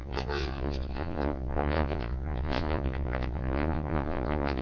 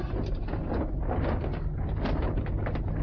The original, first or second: second